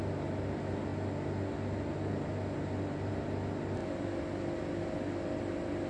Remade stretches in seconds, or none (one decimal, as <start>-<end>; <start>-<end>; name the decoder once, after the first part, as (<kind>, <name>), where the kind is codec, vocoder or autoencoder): none